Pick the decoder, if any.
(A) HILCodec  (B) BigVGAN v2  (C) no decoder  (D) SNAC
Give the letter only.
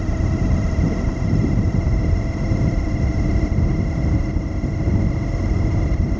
C